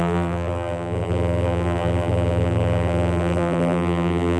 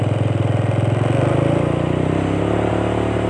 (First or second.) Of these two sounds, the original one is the second